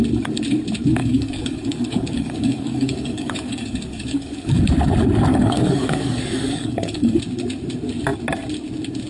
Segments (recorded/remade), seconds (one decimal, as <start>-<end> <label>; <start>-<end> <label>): 0.0-1.0 recorded; 1.0-4.6 remade; 4.6-5.3 recorded; 5.3-7.2 remade; 7.2-9.1 recorded